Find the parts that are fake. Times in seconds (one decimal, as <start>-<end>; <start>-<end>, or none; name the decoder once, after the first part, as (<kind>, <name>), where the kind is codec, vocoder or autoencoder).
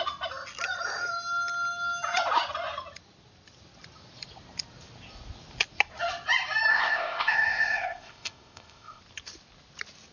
6.7-9.0 (codec, ZipCodec)